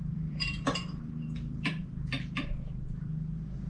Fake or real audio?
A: fake